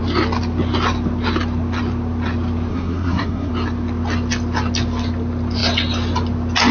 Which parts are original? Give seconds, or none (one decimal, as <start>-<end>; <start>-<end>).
0.0-2.7; 3.5-6.7